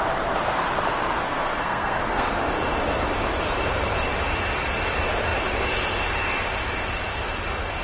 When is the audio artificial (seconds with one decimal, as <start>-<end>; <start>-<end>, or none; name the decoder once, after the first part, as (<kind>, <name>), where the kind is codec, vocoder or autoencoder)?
1.2-2.3 (codec, SNAC)